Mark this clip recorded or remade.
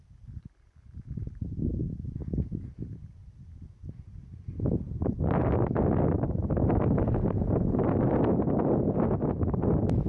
recorded